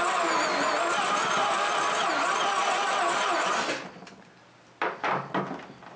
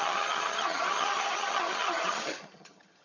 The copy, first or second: second